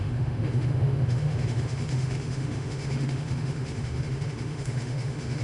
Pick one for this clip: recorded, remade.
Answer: remade